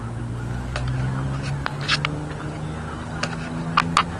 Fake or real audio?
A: real